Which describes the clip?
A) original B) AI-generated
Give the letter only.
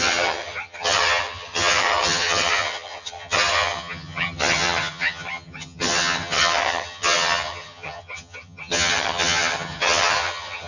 B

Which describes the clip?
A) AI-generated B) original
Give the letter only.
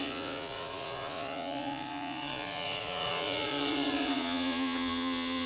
A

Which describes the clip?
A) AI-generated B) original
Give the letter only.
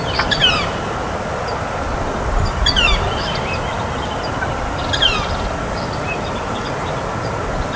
B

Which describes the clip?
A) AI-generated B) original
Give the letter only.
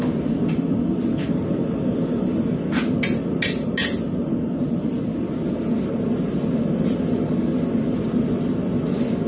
B